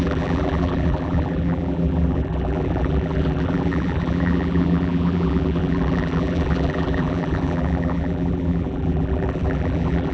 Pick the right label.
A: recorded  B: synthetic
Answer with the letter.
B